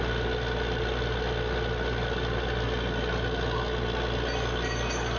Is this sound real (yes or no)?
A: yes